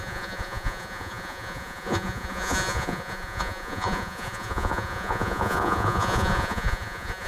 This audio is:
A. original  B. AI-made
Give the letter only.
B